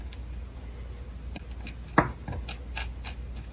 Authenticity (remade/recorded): recorded